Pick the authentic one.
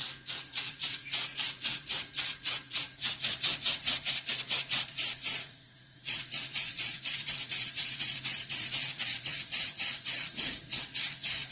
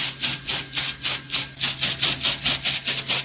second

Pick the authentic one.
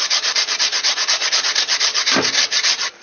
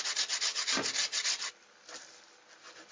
second